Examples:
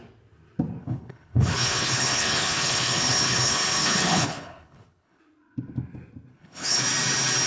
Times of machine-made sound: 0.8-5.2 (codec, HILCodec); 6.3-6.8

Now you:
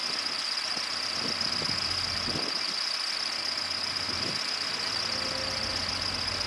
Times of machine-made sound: none

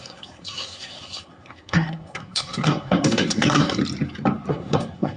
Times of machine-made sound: 0.0-3.8 (codec, SNAC); 4.5-5.2